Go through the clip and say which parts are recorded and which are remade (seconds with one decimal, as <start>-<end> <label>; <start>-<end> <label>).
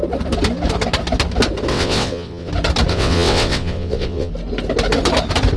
0.0-1.7 recorded; 1.7-2.5 remade; 2.5-2.9 recorded; 2.9-4.3 remade; 4.3-5.6 recorded